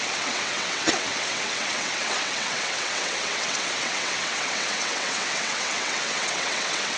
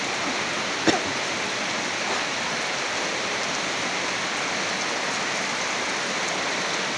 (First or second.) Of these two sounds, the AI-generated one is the first